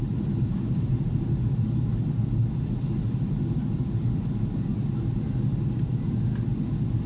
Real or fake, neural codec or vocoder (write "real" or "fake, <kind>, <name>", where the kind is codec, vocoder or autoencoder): real